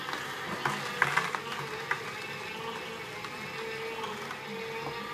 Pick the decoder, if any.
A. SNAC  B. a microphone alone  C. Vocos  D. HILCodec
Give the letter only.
B